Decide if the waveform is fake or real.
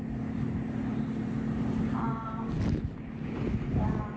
real